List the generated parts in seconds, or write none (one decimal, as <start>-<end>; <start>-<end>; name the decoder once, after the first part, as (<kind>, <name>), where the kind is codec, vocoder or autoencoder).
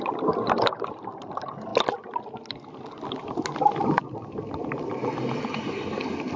none